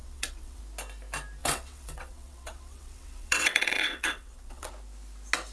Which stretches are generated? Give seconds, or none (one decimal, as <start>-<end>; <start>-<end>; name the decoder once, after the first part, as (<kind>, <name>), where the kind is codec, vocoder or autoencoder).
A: 0.0-0.6 (vocoder, WaveNeXt); 1.4-4.7